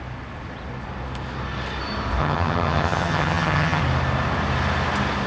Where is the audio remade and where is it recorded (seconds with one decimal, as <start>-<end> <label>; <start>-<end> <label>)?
0.0-2.2 recorded; 2.2-3.8 remade; 3.8-5.3 recorded